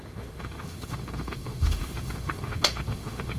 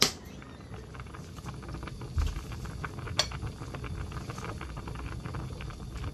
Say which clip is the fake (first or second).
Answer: first